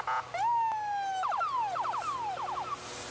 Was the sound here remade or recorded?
recorded